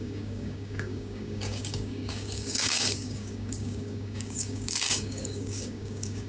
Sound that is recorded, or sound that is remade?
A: remade